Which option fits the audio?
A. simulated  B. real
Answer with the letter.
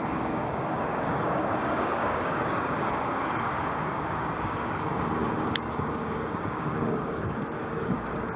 A